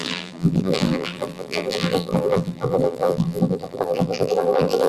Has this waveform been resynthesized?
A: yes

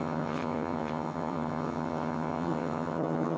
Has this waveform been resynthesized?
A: yes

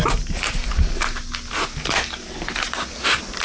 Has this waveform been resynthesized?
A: no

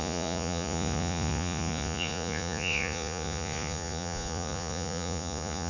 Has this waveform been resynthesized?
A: yes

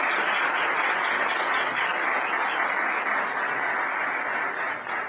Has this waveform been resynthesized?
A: no